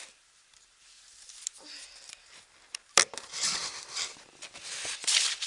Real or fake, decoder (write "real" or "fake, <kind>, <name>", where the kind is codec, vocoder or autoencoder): fake, vocoder, BigVGAN v2